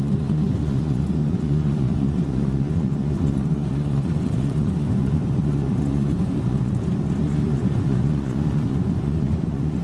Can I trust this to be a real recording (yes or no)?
no